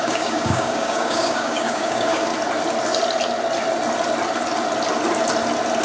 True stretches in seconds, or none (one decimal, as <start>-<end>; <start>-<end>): 2.3-5.8